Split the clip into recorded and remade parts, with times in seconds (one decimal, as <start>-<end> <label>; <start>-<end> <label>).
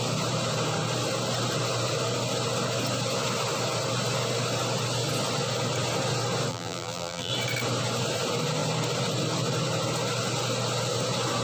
0.0-6.5 recorded; 6.5-7.3 remade; 7.3-11.4 recorded